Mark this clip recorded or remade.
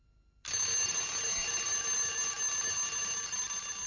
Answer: recorded